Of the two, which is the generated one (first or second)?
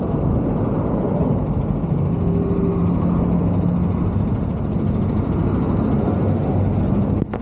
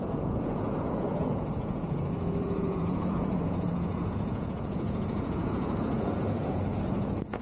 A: second